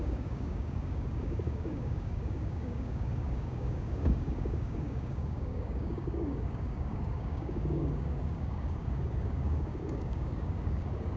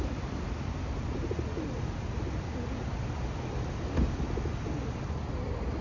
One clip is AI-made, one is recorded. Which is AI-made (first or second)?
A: first